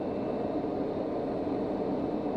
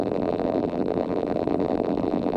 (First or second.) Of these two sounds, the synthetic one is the second